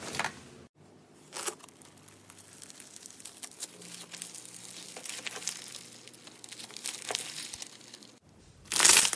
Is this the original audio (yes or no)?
yes